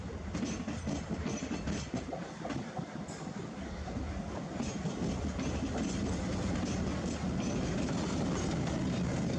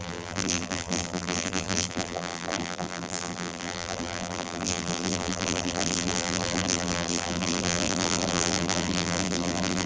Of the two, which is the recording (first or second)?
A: first